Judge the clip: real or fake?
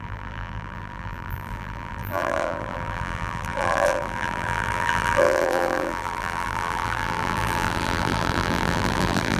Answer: fake